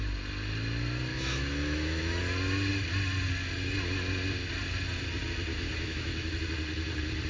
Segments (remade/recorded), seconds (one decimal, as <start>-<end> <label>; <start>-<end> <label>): 0.0-1.1 recorded; 1.1-2.2 remade; 2.2-5.5 recorded; 5.5-6.3 remade; 6.3-7.3 recorded